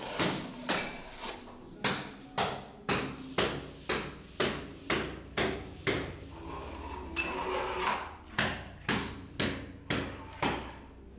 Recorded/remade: recorded